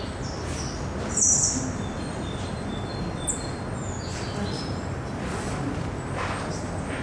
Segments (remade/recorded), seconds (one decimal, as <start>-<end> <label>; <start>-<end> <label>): 0.0-7.0 recorded